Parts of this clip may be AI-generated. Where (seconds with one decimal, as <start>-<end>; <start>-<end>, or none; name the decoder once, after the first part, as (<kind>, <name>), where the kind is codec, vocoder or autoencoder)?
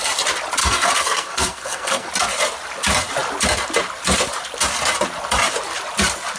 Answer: 0.6-2.1 (codec, SNAC)